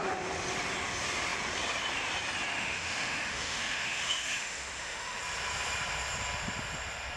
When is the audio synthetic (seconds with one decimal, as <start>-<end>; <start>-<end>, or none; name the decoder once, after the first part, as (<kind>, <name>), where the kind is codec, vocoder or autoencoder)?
2.5-5.2 (autoencoder, DAC-VAE)